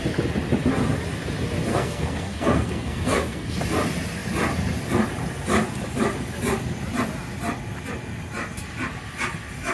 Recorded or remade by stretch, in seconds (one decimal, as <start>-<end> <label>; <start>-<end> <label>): 0.0-1.7 recorded; 1.7-3.6 remade; 3.6-9.7 recorded